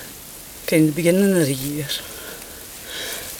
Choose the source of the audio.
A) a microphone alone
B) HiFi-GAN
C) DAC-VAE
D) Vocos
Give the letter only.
A